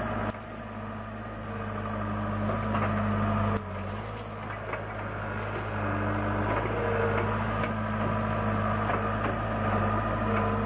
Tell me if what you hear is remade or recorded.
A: recorded